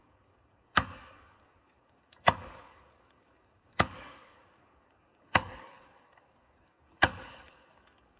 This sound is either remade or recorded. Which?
remade